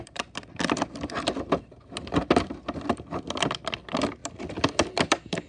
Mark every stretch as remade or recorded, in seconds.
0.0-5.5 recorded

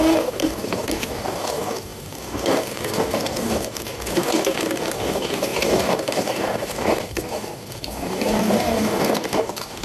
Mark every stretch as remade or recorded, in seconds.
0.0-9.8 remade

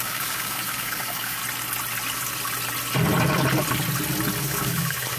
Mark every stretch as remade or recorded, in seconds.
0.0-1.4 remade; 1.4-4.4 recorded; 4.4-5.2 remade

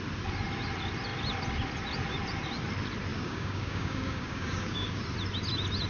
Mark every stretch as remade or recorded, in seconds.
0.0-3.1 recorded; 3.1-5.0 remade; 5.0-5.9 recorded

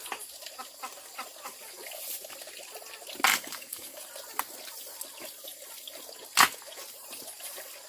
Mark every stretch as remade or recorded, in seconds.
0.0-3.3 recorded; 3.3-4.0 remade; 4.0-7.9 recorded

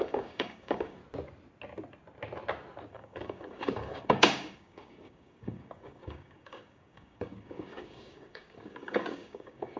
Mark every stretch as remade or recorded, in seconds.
0.0-1.0 remade; 1.0-2.9 recorded; 2.9-9.8 remade

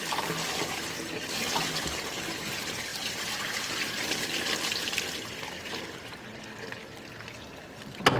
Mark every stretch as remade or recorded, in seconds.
0.0-8.2 recorded

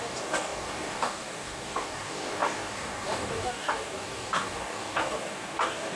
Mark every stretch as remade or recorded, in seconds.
0.0-6.0 remade